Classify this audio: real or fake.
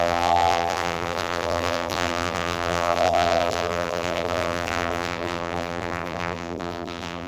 fake